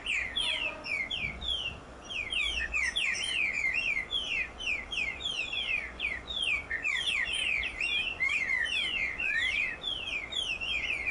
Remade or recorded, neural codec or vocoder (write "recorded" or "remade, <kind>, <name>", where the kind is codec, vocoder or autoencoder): remade, vocoder, Vocos